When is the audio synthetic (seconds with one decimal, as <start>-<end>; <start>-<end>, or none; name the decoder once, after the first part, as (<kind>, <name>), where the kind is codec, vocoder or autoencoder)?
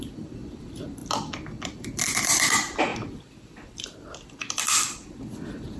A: 0.0-1.0 (vocoder, BigVGAN v2); 1.6-5.8